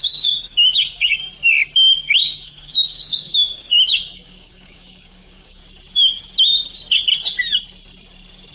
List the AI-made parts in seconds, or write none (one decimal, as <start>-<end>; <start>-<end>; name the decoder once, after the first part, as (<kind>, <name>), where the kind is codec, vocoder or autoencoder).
0.0-1.2 (codec, DAC); 2.2-5.6